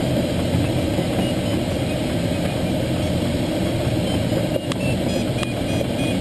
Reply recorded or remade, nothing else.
recorded